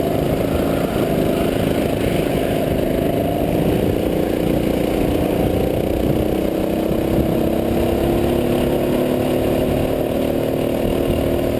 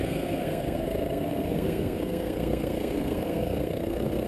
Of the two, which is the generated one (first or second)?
second